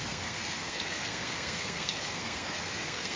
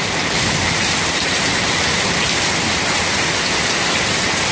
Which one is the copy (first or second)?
first